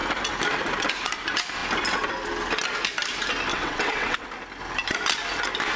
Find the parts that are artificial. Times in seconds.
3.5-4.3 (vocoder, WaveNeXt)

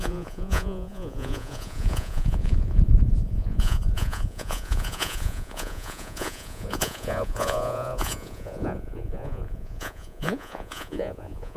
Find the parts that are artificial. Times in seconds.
0.0-11.6 (vocoder, Vocos)